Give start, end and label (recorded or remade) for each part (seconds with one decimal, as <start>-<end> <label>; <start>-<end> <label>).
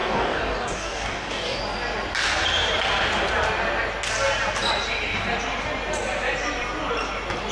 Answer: 0.0-1.6 remade; 1.6-7.5 recorded